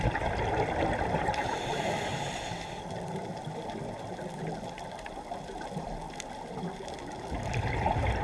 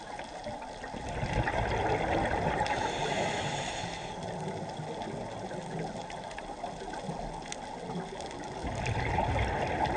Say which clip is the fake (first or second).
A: first